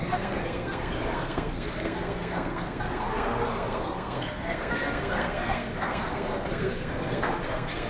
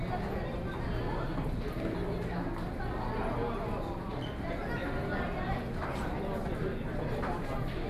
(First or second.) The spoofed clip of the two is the first